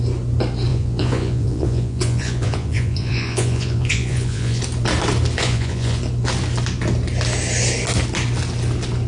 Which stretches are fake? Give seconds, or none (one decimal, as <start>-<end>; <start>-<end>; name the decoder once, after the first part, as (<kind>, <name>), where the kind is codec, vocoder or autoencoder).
0.7-4.6 (vocoder, Vocos); 5.4-6.0